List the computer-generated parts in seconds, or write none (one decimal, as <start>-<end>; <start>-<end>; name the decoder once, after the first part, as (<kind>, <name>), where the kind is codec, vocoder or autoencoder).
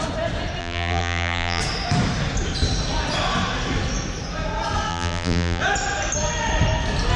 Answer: 0.6-1.6 (vocoder, BigVGAN v2); 4.9-5.6